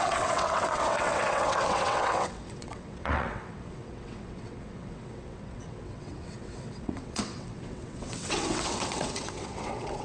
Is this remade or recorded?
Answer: remade